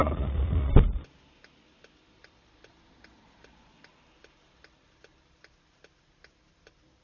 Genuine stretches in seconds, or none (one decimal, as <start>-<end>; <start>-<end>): 0.7-7.0